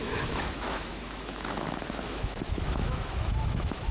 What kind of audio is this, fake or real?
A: fake